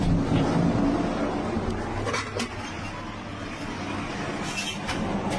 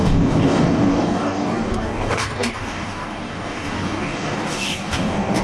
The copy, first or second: second